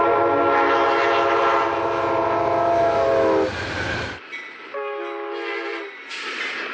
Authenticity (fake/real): real